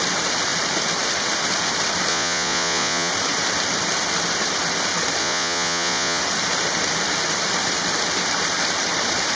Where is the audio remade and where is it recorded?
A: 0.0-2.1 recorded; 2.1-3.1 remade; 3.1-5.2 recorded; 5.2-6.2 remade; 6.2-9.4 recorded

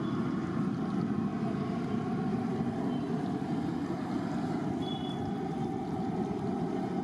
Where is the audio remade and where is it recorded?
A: 0.0-7.0 recorded

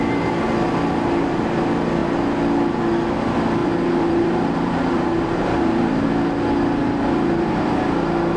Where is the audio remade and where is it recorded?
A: 0.0-3.6 recorded; 3.6-6.1 remade; 6.1-6.8 recorded; 6.8-8.0 remade; 8.0-8.4 recorded

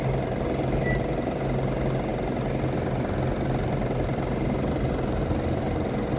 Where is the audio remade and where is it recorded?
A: 0.0-6.2 recorded

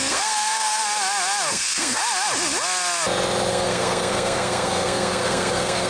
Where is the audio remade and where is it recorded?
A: 0.0-0.8 remade; 0.8-1.5 recorded; 1.5-2.0 remade; 2.0-3.5 recorded; 3.5-5.9 remade

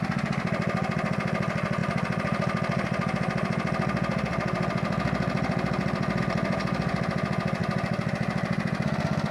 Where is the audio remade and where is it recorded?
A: 0.0-9.3 recorded

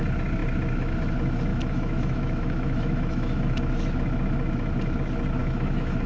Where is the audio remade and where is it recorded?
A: 0.0-1.5 recorded; 1.5-3.7 remade; 3.7-5.4 recorded; 5.4-6.1 remade